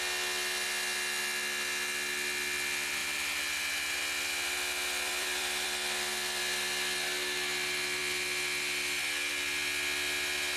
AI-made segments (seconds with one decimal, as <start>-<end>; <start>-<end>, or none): 3.0-6.4